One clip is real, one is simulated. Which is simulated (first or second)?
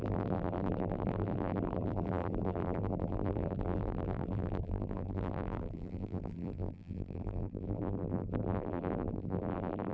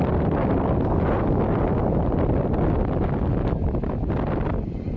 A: first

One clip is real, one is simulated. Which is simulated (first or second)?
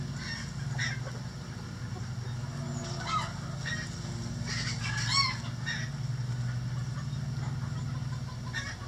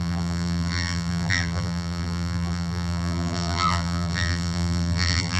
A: second